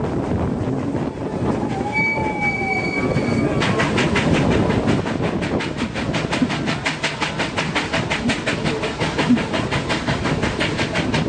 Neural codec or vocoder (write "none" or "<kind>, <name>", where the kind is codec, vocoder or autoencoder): none